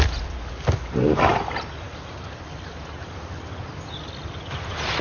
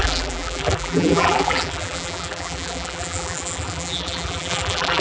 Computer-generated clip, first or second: second